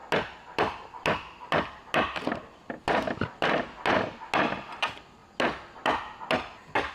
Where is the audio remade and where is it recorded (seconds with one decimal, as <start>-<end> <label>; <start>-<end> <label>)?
0.0-6.9 recorded